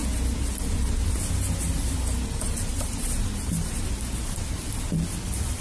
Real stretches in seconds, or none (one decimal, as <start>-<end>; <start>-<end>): 0.0-5.6